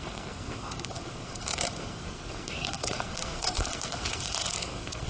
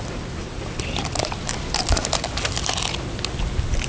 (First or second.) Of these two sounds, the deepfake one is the first